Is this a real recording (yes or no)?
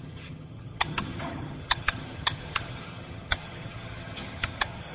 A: no